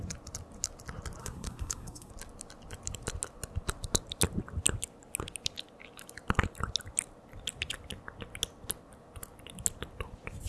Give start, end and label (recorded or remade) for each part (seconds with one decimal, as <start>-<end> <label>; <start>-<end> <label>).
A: 0.0-1.2 recorded; 1.2-2.1 remade; 2.1-10.5 recorded